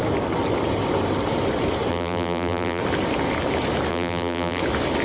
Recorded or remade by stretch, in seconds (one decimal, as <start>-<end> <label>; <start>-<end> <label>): 0.0-1.9 recorded; 1.9-2.8 remade; 2.8-3.9 recorded; 3.9-4.6 remade; 4.6-5.0 recorded